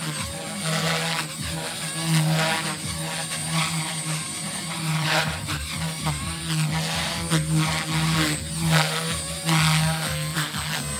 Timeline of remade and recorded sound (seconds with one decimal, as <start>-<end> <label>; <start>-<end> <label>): 0.0-3.4 recorded; 3.4-6.4 remade; 6.4-11.0 recorded